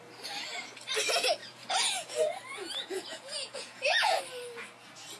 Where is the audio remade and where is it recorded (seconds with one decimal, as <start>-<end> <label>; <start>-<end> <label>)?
0.0-1.4 recorded; 1.4-4.2 remade; 4.2-5.2 recorded

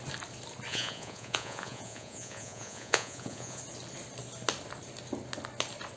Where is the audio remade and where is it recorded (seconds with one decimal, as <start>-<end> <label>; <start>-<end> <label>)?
0.0-0.7 recorded; 0.7-3.6 remade; 3.6-6.0 recorded

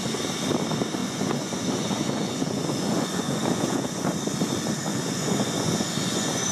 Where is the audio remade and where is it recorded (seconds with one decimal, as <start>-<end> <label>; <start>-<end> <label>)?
0.0-1.0 recorded; 1.0-4.1 remade; 4.1-4.9 recorded; 4.9-6.5 remade

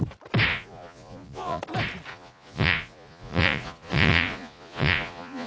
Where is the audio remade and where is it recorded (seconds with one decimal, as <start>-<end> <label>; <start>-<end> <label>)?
0.0-0.5 recorded; 0.5-1.6 remade; 1.6-2.1 recorded; 2.1-5.5 remade